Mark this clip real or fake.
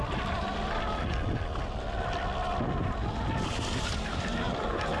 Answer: fake